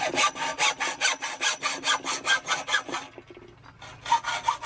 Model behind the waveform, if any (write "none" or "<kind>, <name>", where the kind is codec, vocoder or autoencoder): none